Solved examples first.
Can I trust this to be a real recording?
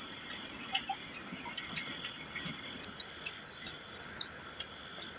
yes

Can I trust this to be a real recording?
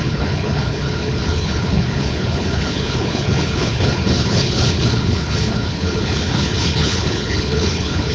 no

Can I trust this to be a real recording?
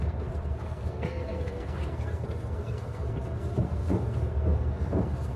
no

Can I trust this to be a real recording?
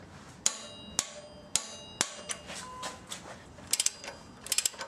yes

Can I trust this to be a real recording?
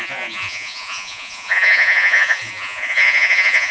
no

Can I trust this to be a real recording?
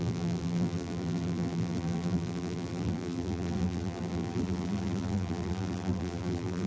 no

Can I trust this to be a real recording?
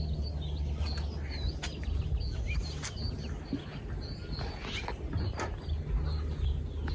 yes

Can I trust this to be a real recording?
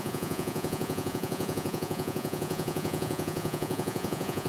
no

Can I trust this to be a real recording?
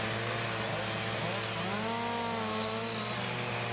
yes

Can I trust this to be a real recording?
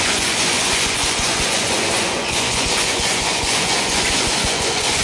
no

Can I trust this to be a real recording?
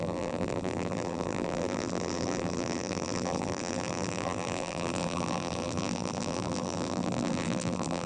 no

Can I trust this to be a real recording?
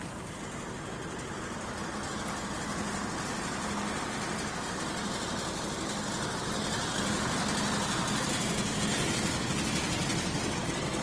yes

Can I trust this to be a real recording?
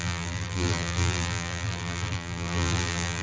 no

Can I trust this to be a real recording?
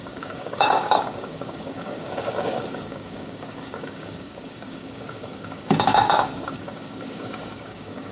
no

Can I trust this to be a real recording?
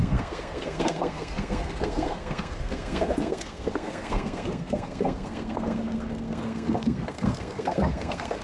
no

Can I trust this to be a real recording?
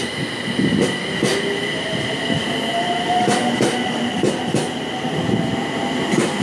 yes